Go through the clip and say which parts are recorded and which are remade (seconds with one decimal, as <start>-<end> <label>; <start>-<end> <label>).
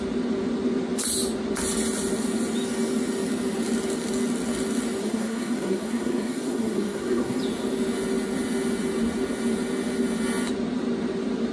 0.0-5.0 recorded; 5.0-7.4 remade; 7.4-11.5 recorded